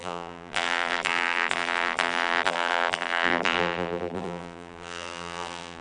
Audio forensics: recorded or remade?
remade